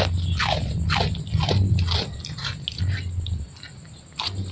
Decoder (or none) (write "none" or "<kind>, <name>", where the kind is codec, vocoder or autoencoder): none